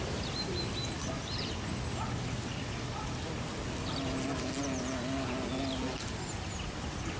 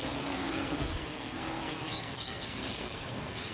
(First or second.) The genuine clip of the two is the first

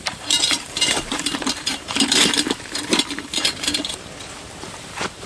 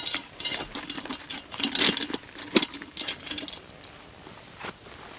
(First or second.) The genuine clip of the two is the second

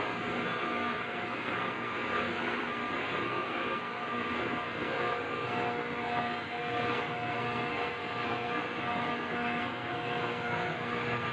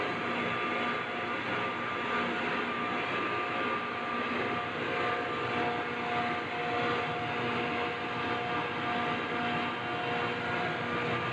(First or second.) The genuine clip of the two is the second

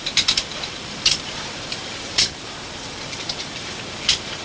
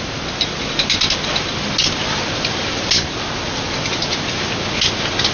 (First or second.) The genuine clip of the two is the second